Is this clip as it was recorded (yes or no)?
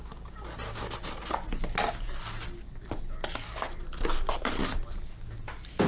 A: yes